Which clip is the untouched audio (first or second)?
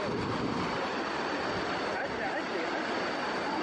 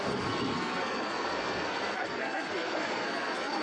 first